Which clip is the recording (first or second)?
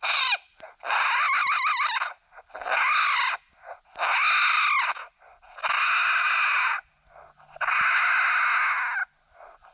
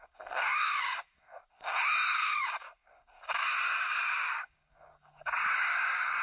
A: first